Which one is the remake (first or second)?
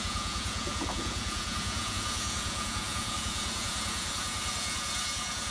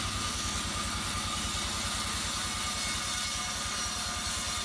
first